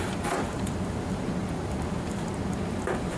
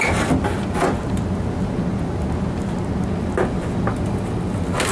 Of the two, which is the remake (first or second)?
first